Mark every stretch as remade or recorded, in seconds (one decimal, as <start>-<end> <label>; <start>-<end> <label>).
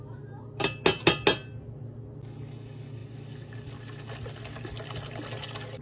0.0-5.8 recorded